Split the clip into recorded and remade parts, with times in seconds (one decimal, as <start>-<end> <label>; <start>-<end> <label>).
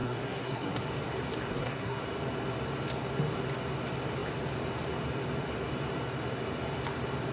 0.0-0.8 remade; 0.8-1.5 recorded; 1.5-2.0 remade; 2.0-7.3 recorded